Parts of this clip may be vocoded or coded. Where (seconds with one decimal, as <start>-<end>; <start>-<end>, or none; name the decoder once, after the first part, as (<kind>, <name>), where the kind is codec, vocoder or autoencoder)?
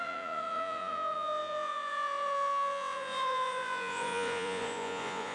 0.0-5.3 (vocoder, Vocos)